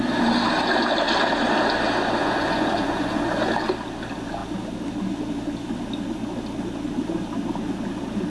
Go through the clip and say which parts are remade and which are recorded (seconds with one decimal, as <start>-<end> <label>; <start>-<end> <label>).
0.0-2.2 recorded; 2.2-3.2 remade; 3.2-8.3 recorded